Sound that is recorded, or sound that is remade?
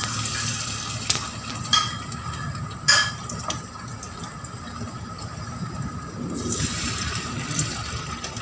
recorded